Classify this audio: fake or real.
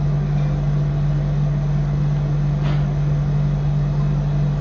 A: real